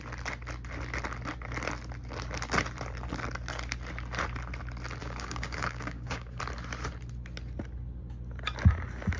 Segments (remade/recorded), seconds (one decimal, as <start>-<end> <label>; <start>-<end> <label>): 0.0-5.0 recorded; 5.0-6.4 remade; 6.4-9.2 recorded